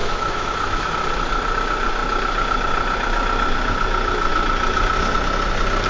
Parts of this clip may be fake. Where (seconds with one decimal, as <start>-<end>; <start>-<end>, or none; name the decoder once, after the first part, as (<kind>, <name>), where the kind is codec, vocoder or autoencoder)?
0.0-0.9 (autoencoder, DAC-VAE)